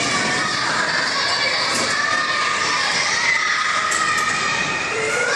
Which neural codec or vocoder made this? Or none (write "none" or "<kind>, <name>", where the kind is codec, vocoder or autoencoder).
vocoder, BigVGAN v2